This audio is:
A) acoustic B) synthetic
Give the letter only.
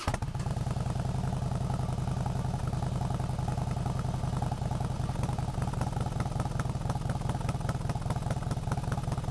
A